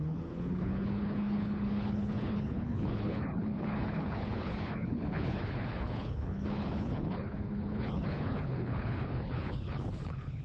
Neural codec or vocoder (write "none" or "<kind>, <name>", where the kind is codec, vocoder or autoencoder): codec, HILCodec